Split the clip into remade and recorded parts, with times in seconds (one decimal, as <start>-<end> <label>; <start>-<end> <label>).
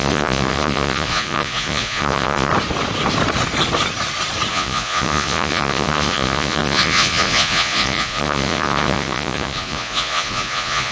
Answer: 0.0-2.5 remade; 2.5-4.5 recorded; 4.5-10.9 remade